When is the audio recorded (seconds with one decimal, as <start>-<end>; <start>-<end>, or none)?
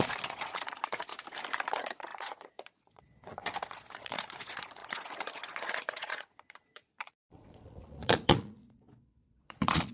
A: 1.1-1.6